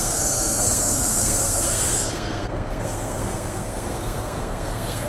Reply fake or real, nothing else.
fake